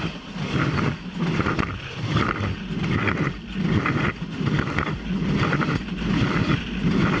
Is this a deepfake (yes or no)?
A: no